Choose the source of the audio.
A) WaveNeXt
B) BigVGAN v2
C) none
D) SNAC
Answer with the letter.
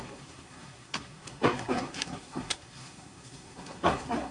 D